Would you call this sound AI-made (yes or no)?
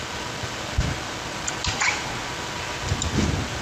no